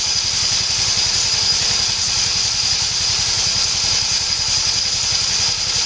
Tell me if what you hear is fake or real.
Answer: real